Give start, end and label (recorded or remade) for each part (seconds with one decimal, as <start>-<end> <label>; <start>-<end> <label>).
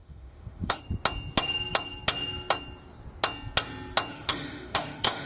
0.0-0.8 remade; 0.8-4.1 recorded; 4.1-5.3 remade